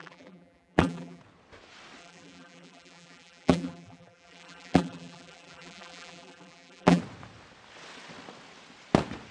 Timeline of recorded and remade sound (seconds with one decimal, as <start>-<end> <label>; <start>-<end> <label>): 0.0-1.2 remade; 1.2-2.0 recorded; 2.0-7.0 remade; 7.0-9.3 recorded